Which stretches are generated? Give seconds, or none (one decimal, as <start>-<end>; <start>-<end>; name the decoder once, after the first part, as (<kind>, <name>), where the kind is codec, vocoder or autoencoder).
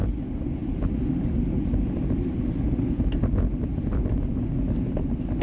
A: none